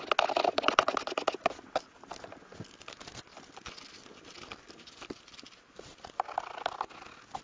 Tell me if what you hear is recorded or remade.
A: recorded